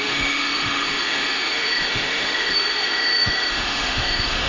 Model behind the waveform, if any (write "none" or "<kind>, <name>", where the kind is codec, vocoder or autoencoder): autoencoder, DAC-VAE